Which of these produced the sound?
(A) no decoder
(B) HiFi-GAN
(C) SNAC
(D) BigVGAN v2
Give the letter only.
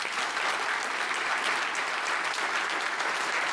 A